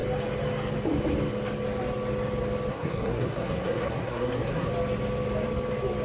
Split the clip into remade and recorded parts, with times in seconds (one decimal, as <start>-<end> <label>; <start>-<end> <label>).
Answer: 0.0-2.7 recorded; 2.7-4.7 remade; 4.7-6.0 recorded

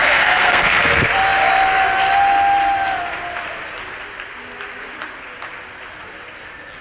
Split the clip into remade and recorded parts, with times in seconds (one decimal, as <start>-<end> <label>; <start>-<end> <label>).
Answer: 0.0-0.8 remade; 0.8-6.8 recorded

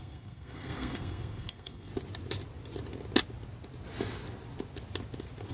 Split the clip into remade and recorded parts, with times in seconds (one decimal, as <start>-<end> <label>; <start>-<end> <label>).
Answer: 0.0-1.9 remade; 1.9-5.5 recorded

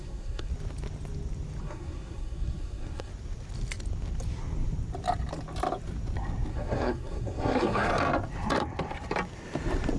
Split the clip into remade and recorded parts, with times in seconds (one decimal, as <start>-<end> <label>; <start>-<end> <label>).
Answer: 0.0-0.5 remade; 0.5-1.6 recorded; 1.6-3.1 remade; 3.1-6.5 recorded; 6.5-7.9 remade; 7.9-10.0 recorded

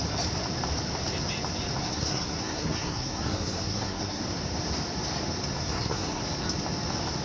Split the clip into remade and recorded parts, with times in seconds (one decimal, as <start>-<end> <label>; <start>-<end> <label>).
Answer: 0.0-1.8 recorded; 1.8-4.2 remade; 4.2-5.6 recorded; 5.6-6.2 remade; 6.2-7.2 recorded